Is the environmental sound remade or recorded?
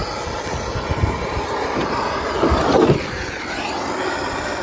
recorded